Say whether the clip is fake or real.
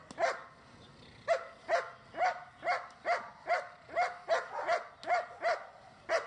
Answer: real